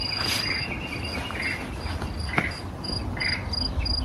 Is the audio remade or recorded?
recorded